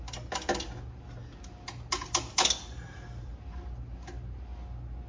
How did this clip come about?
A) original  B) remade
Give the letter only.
A